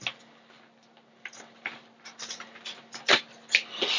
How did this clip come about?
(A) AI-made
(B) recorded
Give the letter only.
B